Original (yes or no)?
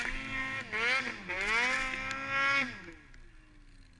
yes